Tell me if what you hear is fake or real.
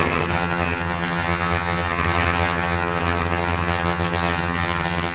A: fake